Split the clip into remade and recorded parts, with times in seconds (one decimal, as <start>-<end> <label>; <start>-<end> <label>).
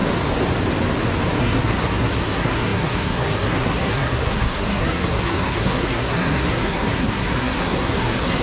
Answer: 0.0-1.4 recorded; 1.4-8.4 remade